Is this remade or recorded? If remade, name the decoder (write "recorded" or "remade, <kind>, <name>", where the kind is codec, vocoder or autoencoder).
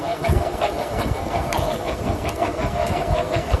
remade, codec, SNAC